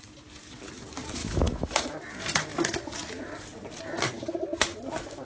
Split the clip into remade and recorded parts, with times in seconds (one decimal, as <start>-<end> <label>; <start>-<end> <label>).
0.0-1.2 recorded; 1.2-2.0 remade; 2.0-5.2 recorded